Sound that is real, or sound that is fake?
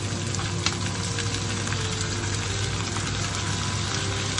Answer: real